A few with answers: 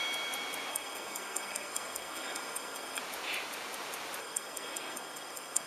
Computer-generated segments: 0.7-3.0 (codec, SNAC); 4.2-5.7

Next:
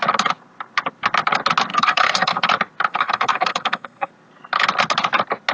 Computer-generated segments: 1.7-2.5 (codec, SNAC); 2.9-4.1

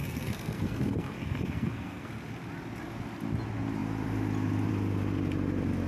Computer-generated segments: 0.0-2.1 (codec, SNAC)

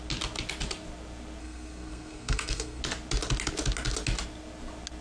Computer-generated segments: 1.4-2.8 (codec, SNAC)

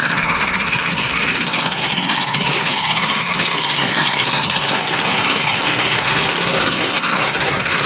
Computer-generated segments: 0.0-7.9 (codec, SNAC)

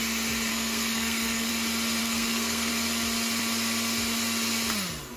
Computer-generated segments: 0.5-1.5 (codec, SNAC); 2.0-2.7